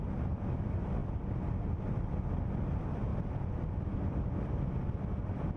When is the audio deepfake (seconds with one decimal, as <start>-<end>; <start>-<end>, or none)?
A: 0.0-1.0; 2.1-5.6